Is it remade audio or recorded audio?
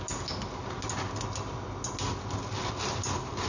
recorded